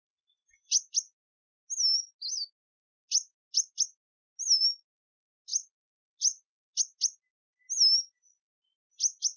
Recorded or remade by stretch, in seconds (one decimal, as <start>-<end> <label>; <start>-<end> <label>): 0.0-9.4 recorded